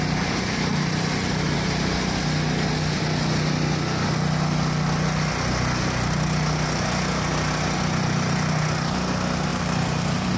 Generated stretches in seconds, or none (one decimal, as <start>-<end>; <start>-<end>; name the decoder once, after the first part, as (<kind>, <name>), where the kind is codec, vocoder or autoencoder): 0.7-1.8 (vocoder, BigVGAN v2); 9.5-10.4